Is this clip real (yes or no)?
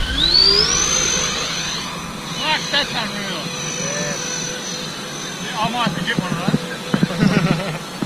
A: yes